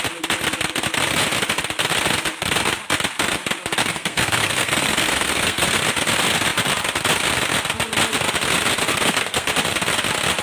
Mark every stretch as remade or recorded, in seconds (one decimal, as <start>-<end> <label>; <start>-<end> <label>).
0.0-3.8 recorded; 3.8-5.8 remade; 5.8-8.9 recorded; 8.9-9.5 remade; 9.5-10.4 recorded